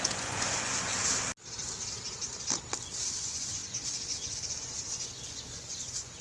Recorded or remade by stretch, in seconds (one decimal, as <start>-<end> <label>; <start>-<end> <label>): 0.0-0.9 remade; 0.9-3.2 recorded; 3.2-6.2 remade